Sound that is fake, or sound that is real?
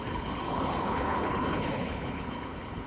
fake